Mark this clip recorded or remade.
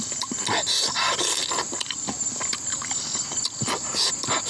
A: recorded